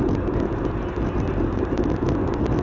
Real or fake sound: real